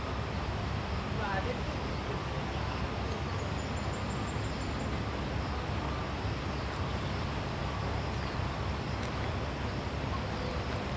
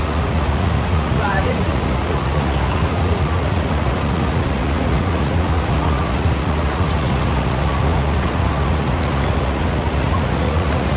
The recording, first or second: first